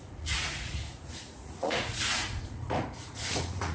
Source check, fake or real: fake